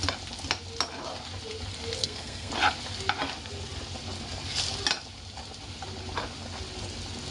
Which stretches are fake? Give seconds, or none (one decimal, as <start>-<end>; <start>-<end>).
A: 2.0-2.5